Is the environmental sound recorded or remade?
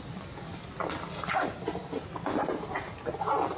recorded